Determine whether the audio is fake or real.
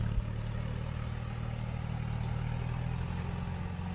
real